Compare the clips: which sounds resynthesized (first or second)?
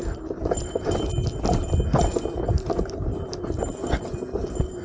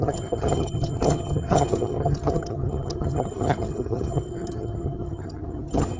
second